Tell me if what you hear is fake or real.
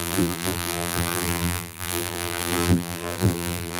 fake